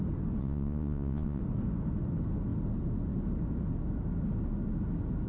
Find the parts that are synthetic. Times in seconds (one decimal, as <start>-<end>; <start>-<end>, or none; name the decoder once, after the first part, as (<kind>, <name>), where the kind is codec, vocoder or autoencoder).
0.4-1.4 (vocoder, Vocos)

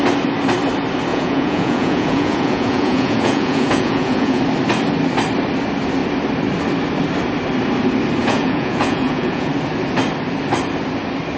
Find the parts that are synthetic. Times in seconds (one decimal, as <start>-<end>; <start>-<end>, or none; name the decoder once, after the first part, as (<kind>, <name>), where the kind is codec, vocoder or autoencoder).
1.1-4.4 (vocoder, Vocos); 8.2-9.5

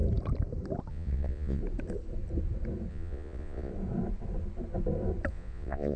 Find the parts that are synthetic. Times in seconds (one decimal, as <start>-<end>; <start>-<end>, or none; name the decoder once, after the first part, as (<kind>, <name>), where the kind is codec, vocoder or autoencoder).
0.9-1.6 (vocoder, Vocos); 2.9-3.7; 5.3-6.0

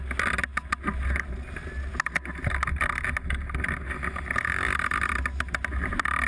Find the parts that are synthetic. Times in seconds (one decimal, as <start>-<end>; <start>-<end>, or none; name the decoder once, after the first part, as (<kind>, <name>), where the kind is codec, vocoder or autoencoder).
none

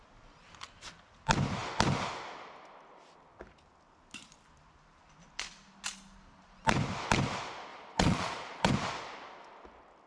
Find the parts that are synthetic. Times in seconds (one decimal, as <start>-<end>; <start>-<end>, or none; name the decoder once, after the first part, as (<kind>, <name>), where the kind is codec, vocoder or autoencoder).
7.7-8.7 (vocoder, Vocos)

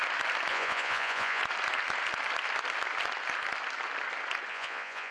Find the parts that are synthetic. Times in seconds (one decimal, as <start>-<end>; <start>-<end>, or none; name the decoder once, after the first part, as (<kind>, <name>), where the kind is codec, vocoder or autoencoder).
0.5-1.4 (vocoder, Vocos); 4.5-5.1

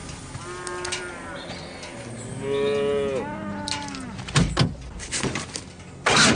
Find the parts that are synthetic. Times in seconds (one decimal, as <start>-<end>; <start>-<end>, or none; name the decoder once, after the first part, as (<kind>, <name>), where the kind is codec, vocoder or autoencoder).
none

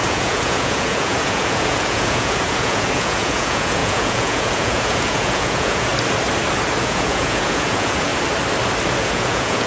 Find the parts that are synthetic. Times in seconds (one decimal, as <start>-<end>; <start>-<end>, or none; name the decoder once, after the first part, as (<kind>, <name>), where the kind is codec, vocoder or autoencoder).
0.0-5.9 (vocoder, Vocos); 6.8-8.1; 9.0-9.7